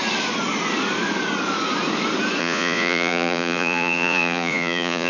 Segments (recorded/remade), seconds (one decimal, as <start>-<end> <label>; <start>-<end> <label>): 0.0-2.4 recorded; 2.4-5.1 remade